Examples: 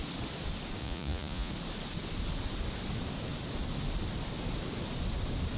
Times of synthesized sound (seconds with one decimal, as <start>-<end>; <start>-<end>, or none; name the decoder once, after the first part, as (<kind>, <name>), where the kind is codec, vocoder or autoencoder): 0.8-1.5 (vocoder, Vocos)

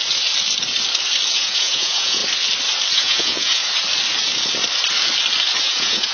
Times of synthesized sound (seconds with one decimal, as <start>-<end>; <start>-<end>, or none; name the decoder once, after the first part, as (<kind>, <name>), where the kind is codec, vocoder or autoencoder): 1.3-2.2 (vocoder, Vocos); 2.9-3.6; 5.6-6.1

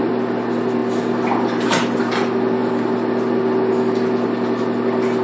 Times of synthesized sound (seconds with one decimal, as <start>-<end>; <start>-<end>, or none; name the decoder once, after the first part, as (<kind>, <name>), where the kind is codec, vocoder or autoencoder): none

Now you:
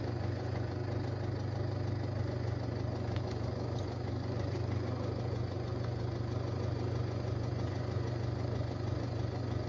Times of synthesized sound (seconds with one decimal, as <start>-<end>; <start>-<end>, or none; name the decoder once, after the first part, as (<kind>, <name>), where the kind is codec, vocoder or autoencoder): 0.0-0.8 (vocoder, Vocos); 2.2-9.7

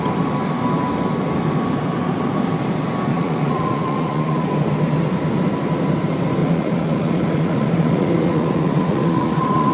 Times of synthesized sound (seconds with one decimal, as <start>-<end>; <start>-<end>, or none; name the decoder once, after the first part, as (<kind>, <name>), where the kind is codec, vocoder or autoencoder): 3.1-4.5 (vocoder, Vocos); 6.4-9.7

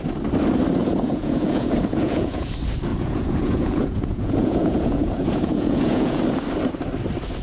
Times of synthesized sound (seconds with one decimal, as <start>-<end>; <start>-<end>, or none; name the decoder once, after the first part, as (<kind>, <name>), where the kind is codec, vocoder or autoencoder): 0.8-2.5 (vocoder, Vocos); 2.9-6.2

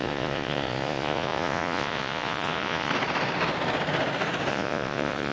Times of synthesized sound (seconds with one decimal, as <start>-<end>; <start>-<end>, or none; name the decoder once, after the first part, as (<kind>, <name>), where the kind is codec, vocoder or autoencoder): 0.0-2.9 (vocoder, Vocos); 4.5-5.3